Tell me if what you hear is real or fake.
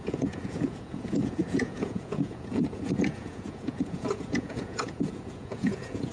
fake